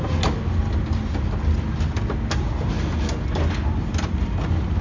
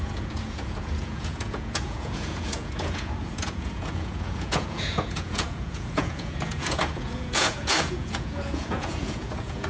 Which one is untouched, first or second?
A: first